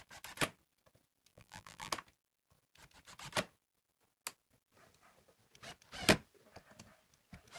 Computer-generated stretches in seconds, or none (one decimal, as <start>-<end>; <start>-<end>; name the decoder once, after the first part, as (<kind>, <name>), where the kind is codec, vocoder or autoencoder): 1.3-1.9 (vocoder, BigVGAN v2)